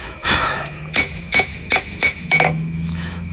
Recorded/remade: remade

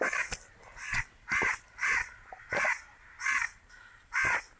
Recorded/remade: recorded